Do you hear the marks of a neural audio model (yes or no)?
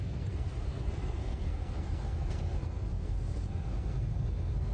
yes